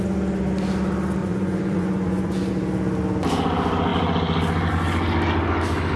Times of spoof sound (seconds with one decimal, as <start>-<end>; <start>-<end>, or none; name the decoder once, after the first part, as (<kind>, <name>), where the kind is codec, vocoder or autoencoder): 1.2-2.5 (vocoder, Vocos)